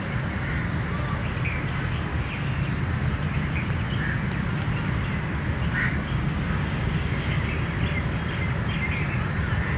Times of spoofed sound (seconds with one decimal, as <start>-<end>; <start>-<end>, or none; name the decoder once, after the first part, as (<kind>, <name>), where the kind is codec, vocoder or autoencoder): 2.1-2.6 (codec, DAC); 5.8-7.4